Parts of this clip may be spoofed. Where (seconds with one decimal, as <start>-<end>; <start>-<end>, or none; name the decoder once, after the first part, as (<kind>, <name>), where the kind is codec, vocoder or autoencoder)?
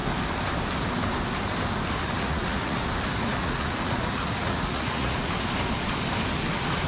2.0-2.8 (vocoder, Vocos); 3.4-5.3